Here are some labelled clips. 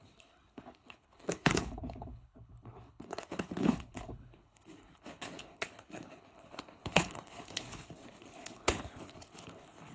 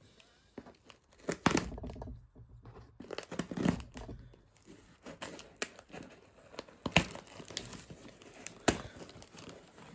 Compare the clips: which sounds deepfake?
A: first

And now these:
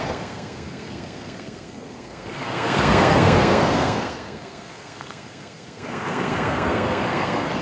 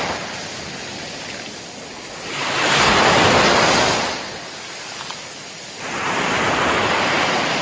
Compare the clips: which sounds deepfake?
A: first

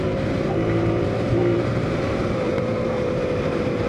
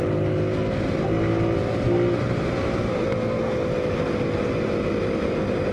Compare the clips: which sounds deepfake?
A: first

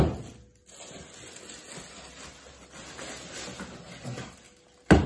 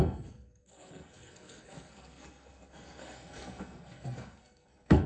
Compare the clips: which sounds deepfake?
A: second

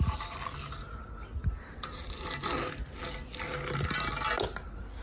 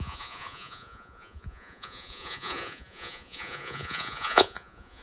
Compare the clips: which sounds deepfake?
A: second